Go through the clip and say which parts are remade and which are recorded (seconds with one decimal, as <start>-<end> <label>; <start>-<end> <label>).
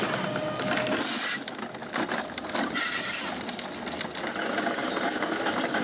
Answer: 0.0-5.8 recorded